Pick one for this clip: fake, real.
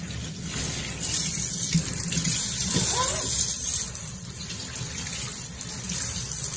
real